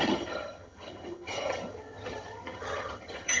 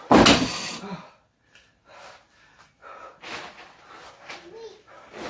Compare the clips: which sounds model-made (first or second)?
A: first